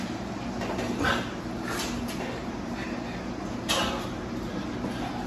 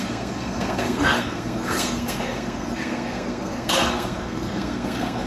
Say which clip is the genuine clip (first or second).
first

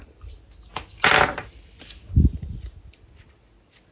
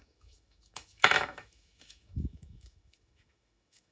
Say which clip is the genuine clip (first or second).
first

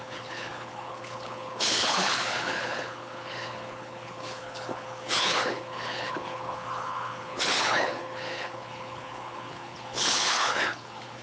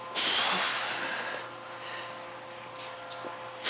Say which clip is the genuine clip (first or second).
second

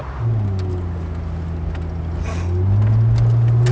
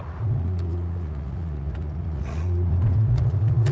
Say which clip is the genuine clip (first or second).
first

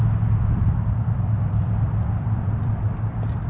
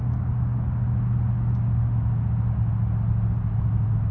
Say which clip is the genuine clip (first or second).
second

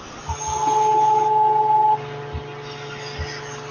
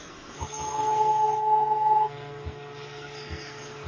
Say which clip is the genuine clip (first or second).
first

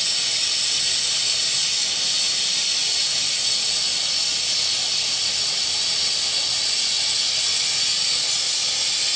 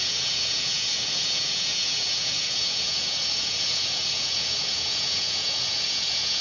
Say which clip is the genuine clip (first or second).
first